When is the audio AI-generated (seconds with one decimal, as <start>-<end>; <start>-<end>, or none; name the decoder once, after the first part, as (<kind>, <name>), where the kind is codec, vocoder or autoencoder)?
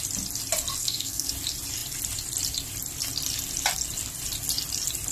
0.8-1.3 (codec, SNAC)